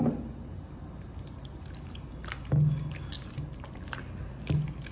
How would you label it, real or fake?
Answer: real